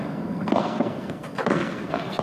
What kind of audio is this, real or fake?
fake